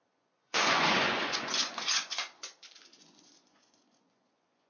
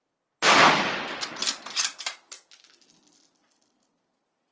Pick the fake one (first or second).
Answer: first